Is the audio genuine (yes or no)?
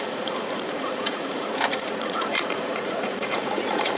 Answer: no